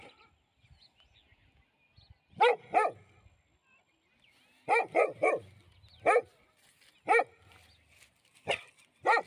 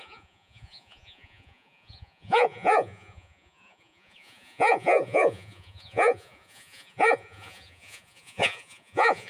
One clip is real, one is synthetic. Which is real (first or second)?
first